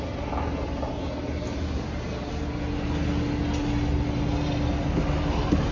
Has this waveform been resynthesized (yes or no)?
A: no